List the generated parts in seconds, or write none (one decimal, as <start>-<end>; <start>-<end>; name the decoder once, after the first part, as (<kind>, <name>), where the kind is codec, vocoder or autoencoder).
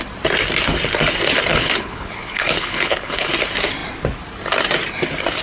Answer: 1.5-3.3 (codec, HILCodec)